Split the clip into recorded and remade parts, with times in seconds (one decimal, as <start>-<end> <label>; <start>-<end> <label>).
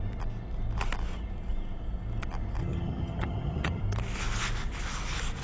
0.0-2.6 recorded; 2.6-3.8 remade; 3.8-5.4 recorded